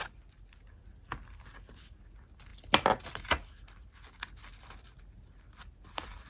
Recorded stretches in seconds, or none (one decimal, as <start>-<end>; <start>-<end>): 0.0-6.3